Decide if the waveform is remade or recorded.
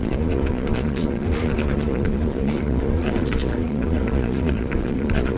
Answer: remade